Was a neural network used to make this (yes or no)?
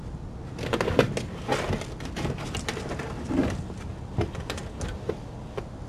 no